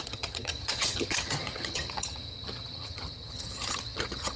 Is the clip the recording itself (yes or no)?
no